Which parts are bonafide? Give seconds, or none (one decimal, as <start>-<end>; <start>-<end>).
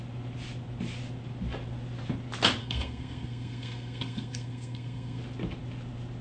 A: 0.0-2.6; 5.2-6.2